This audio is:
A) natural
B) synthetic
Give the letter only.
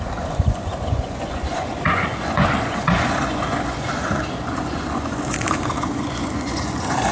B